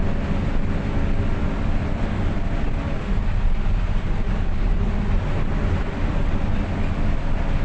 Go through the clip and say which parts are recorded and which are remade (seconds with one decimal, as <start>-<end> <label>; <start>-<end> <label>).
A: 0.0-4.4 recorded; 4.4-4.9 remade; 4.9-7.6 recorded